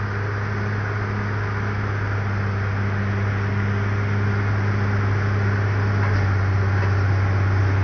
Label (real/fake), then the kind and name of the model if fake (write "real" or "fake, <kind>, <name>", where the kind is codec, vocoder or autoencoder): real